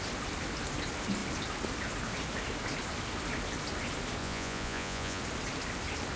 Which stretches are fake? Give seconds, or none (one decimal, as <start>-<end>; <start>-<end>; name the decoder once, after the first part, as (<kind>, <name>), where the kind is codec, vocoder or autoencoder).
4.2-5.2 (vocoder, Vocos)